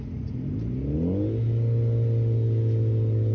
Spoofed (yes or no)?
no